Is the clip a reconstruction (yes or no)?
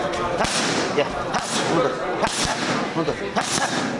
yes